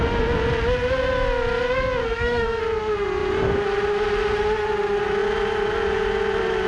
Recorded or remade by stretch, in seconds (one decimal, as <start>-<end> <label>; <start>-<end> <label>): 0.0-2.0 recorded; 2.0-2.6 remade; 2.6-6.7 recorded